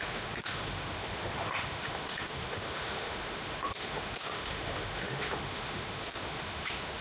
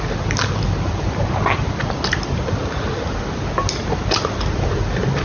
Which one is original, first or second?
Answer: second